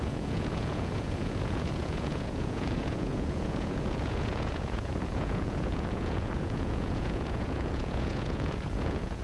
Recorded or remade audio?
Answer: remade